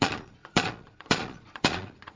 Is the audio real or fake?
fake